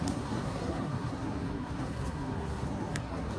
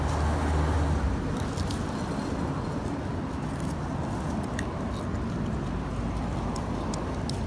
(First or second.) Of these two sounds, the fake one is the first